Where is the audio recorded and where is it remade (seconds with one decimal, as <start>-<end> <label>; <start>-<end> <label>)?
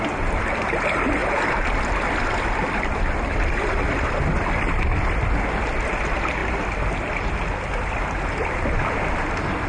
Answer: 0.0-9.7 recorded